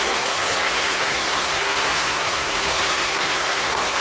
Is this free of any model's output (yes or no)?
no